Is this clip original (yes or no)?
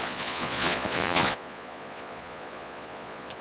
no